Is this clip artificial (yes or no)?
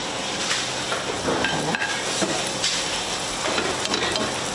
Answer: no